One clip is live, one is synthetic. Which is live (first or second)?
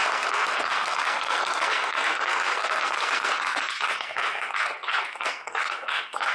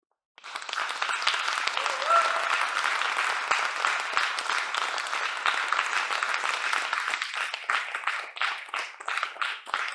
second